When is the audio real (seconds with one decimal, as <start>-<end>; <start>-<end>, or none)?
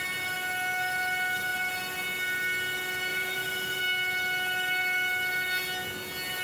0.0-3.1; 3.8-6.4